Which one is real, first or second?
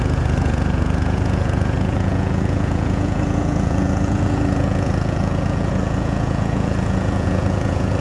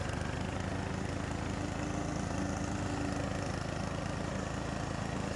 second